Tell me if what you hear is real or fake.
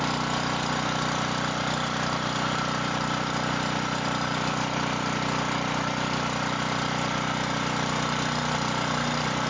real